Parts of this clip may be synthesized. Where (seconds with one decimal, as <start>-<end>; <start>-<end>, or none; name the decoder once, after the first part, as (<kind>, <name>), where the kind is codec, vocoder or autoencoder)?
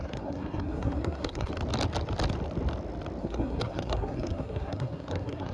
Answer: 0.0-1.5 (codec, SNAC); 3.2-5.5